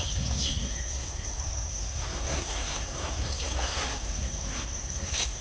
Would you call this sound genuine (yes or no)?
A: no